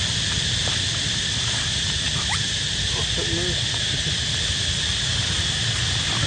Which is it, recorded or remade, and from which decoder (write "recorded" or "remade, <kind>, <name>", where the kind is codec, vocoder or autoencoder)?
recorded